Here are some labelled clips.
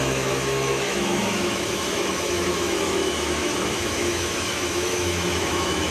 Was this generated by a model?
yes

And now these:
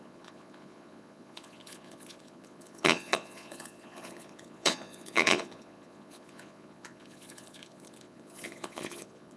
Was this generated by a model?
yes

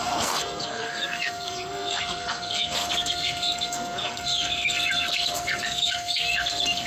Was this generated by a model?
yes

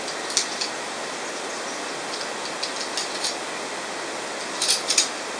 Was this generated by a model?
no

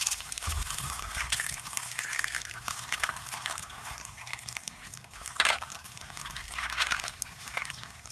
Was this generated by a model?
yes